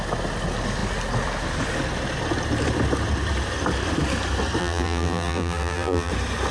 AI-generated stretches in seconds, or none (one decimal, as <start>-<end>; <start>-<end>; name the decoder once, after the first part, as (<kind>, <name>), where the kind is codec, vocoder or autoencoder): 4.6-6.1 (vocoder, BigVGAN v2)

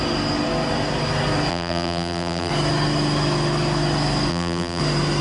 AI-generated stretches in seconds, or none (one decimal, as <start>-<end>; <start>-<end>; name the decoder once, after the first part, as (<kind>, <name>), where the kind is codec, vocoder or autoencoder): 1.5-2.5 (vocoder, BigVGAN v2); 4.3-4.8

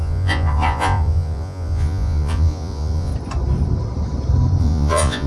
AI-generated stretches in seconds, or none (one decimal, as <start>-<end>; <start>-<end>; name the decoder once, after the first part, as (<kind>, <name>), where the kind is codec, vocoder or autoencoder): 0.0-3.1 (vocoder, Vocos); 4.6-5.3